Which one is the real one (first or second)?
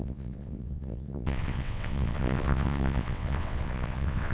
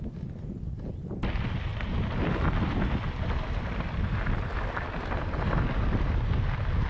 second